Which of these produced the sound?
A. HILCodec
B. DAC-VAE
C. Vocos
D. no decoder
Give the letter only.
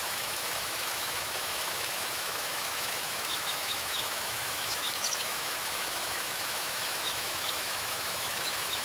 B